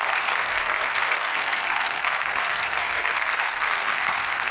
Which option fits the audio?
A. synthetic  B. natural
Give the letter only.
A